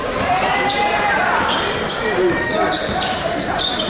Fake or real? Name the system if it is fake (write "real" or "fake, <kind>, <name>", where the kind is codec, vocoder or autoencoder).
fake, vocoder, BigVGAN v2